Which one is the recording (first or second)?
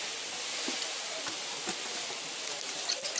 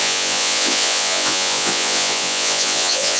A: first